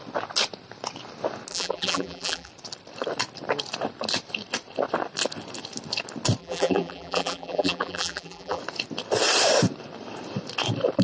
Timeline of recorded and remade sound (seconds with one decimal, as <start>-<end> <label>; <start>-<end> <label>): 0.0-1.5 recorded; 1.5-2.5 remade; 2.5-6.4 recorded; 6.4-8.6 remade; 8.6-11.0 recorded